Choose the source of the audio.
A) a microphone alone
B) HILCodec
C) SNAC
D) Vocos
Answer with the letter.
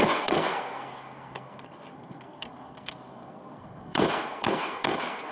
C